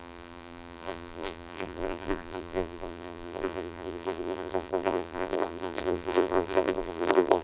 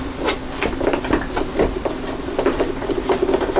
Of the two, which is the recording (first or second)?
second